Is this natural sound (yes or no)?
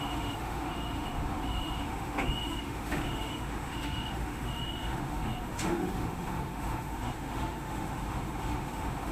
no